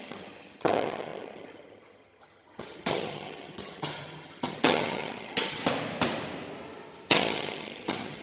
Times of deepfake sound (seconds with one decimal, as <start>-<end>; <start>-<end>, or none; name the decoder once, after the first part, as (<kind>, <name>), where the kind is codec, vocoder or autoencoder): 0.0-5.6 (vocoder, HiFi-GAN); 7.1-8.2